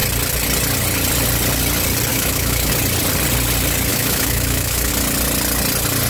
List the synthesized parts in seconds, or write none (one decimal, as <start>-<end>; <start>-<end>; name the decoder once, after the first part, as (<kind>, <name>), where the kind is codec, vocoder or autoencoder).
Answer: 2.1-2.7 (autoencoder, DAC-VAE); 3.9-4.9